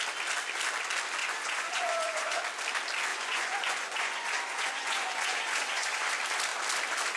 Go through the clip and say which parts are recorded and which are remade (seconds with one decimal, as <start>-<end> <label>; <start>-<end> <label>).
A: 0.0-1.2 recorded; 1.2-2.4 remade; 2.4-3.1 recorded; 3.1-6.1 remade; 6.1-7.2 recorded